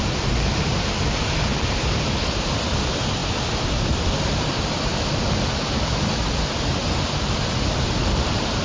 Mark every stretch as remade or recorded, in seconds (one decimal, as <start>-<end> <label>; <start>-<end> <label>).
0.0-8.6 recorded

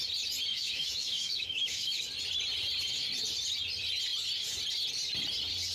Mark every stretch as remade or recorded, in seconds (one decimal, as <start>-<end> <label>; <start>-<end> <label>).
0.0-0.5 recorded; 0.5-2.0 remade; 2.0-5.7 recorded

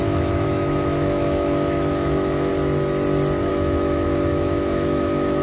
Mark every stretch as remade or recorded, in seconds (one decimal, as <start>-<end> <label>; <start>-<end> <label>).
0.0-2.5 remade; 2.5-3.5 recorded; 3.5-5.4 remade

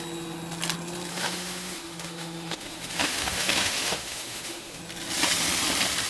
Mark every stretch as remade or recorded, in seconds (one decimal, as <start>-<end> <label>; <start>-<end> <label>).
0.0-1.1 recorded; 1.1-4.8 remade; 4.8-6.1 recorded

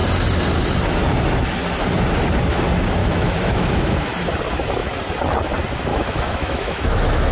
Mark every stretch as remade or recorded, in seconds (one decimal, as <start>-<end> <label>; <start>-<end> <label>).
0.0-3.0 recorded; 3.0-4.1 remade; 4.1-5.9 recorded; 5.9-7.3 remade

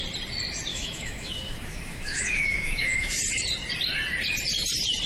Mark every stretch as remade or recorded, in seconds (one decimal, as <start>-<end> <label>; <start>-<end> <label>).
0.0-0.7 recorded; 0.7-3.2 remade; 3.2-5.1 recorded